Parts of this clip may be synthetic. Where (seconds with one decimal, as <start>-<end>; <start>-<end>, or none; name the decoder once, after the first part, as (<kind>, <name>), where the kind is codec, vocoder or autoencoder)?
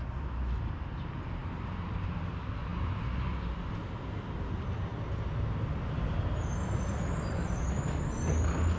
1.4-2.3 (vocoder, BigVGAN v2)